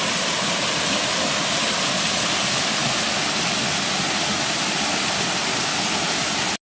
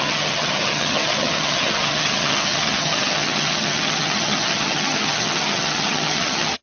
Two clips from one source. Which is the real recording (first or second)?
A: first